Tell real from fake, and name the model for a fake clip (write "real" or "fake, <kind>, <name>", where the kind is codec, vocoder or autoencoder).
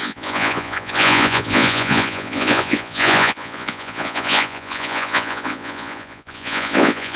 fake, vocoder, Vocos